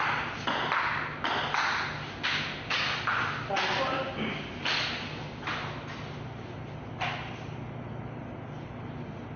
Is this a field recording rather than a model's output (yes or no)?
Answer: yes